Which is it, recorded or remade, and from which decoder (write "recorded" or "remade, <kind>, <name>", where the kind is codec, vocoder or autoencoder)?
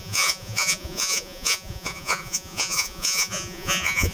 remade, vocoder, Vocos